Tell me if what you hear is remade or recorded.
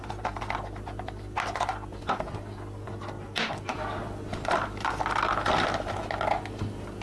recorded